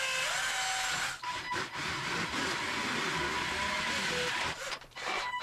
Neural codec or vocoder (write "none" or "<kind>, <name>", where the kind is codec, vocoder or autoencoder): none